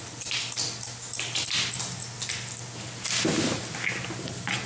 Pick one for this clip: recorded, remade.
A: recorded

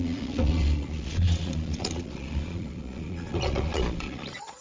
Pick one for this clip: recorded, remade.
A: remade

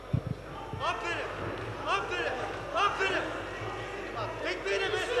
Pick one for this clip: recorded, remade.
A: recorded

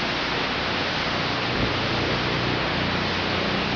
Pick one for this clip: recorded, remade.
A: recorded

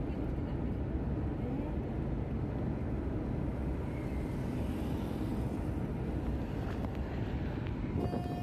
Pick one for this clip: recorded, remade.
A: recorded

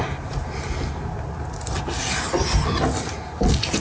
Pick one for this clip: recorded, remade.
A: recorded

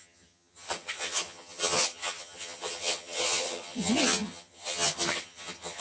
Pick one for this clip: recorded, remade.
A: remade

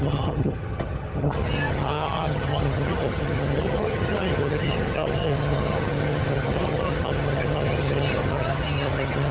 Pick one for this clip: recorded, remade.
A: remade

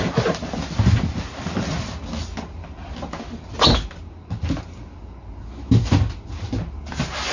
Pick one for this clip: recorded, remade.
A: recorded